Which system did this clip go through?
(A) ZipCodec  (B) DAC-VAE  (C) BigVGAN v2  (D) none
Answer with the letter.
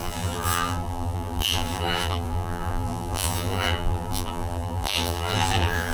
C